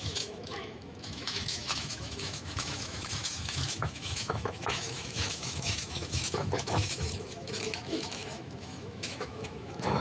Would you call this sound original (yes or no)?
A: no